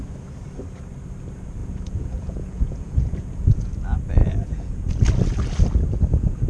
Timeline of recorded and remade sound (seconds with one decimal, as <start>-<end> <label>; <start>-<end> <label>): 0.0-1.6 recorded; 1.6-3.7 remade; 3.7-4.2 recorded; 4.2-4.9 remade; 4.9-6.5 recorded